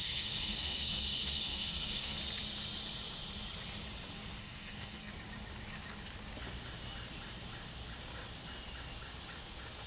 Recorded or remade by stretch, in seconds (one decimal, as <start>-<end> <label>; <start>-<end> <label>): 0.0-2.2 remade; 2.2-4.4 recorded; 4.4-5.1 remade; 5.1-9.9 recorded